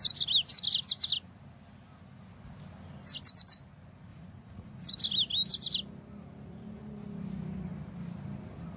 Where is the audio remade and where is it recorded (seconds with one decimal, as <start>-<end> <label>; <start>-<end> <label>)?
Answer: 0.0-4.1 recorded; 4.1-4.9 remade; 4.9-8.8 recorded